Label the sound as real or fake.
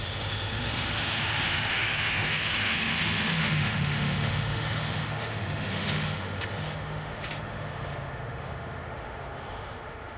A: fake